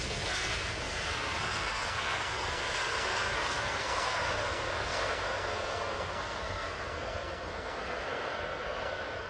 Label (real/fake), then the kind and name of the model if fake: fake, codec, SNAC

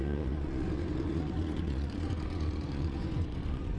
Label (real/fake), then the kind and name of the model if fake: fake, vocoder, Vocos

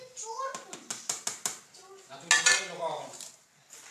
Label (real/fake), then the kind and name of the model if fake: real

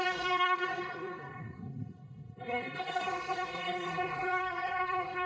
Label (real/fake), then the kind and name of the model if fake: fake, codec, SNAC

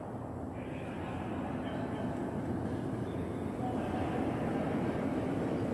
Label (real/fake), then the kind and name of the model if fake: real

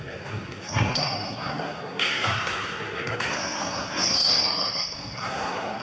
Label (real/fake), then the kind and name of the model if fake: fake, codec, SNAC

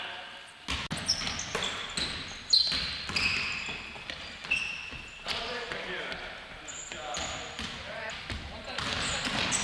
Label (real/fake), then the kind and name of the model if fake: real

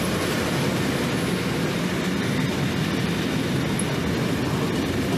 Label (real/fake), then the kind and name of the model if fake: real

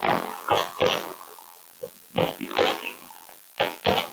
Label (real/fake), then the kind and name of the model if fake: fake, vocoder, BigVGAN v2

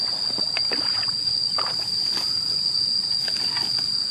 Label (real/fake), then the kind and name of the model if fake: real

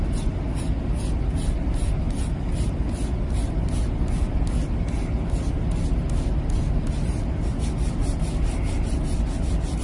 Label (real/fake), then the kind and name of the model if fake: real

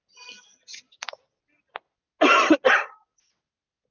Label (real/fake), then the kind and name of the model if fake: real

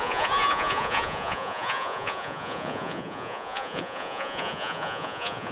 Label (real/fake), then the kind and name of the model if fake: fake, vocoder, Vocos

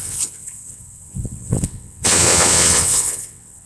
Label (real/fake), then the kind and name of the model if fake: fake, vocoder, WaveNeXt